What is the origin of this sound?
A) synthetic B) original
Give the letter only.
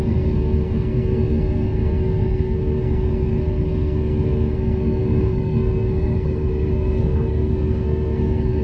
A